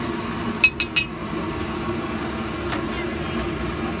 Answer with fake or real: real